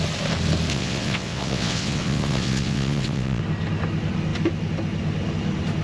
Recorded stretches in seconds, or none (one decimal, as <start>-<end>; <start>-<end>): 0.0-0.7; 3.4-5.8